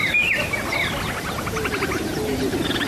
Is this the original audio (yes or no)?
yes